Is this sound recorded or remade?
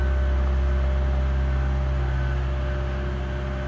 recorded